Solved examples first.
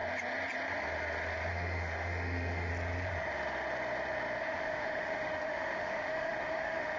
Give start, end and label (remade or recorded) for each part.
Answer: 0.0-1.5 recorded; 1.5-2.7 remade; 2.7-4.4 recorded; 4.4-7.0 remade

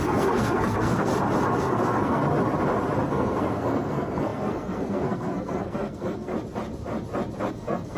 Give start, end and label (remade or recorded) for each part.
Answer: 0.0-1.1 remade; 1.1-1.6 recorded; 1.6-2.2 remade; 2.2-3.1 recorded; 3.1-6.3 remade; 6.3-7.5 recorded; 7.5-8.0 remade

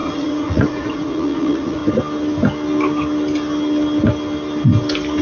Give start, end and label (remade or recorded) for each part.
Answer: 0.0-1.8 remade; 1.8-5.2 recorded

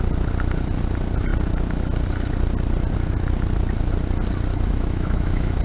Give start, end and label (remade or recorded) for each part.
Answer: 0.0-4.5 recorded; 4.5-5.6 remade

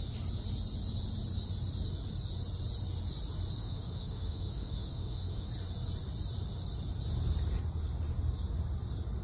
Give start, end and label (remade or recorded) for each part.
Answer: 0.0-3.6 recorded; 3.6-5.5 remade; 5.5-9.2 recorded

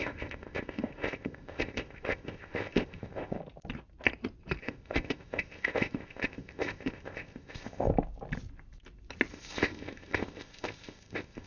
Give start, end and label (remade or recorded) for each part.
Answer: 0.0-3.4 remade; 3.4-4.6 recorded; 4.6-7.9 remade; 7.9-9.3 recorded; 9.3-11.5 remade

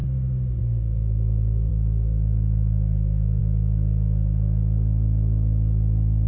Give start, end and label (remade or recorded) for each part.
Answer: 0.0-1.7 recorded; 1.7-3.4 remade; 3.4-6.3 recorded

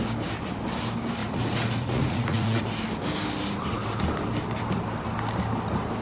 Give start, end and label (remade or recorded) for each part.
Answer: 0.0-1.2 recorded; 1.2-2.6 remade; 2.6-6.0 recorded